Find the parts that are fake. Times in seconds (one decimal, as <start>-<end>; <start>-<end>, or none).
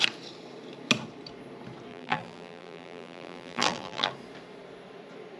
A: 1.9-4.1